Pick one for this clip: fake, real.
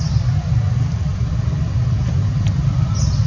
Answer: real